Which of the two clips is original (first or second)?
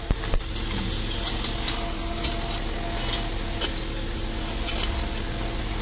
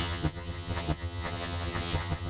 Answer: first